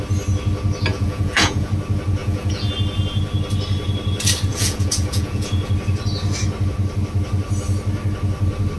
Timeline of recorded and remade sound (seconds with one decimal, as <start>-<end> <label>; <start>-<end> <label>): 0.0-0.9 recorded; 0.9-1.7 remade; 1.7-2.2 recorded; 2.2-2.7 remade; 2.7-4.5 recorded; 4.5-5.7 remade; 5.7-8.8 recorded